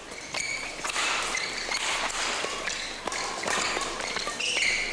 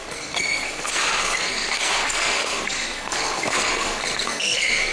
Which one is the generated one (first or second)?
second